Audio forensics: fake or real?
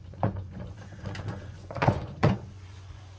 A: fake